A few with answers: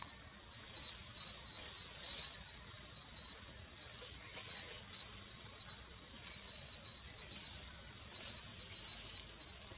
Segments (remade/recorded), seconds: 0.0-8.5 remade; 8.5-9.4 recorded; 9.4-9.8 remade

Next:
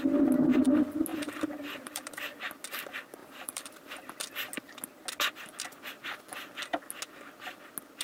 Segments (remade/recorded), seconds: 0.0-1.1 recorded; 1.1-2.2 remade; 2.2-3.2 recorded; 3.2-4.1 remade; 4.1-8.0 recorded

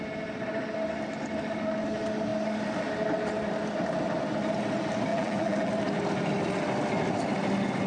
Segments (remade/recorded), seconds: 0.0-5.1 recorded; 5.1-5.7 remade; 5.7-7.9 recorded